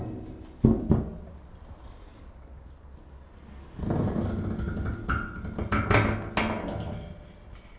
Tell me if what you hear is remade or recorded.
recorded